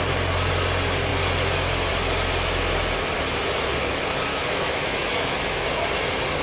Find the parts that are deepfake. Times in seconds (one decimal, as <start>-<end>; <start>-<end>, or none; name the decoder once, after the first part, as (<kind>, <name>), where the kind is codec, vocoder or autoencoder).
4.3-5.7 (autoencoder, DAC-VAE)